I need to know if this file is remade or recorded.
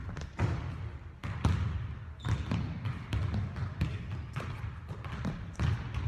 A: recorded